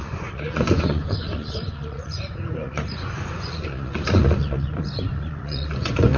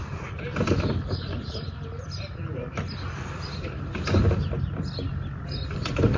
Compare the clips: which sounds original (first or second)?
second